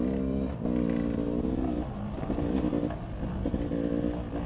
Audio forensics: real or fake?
real